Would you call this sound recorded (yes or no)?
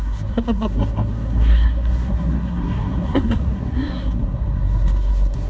no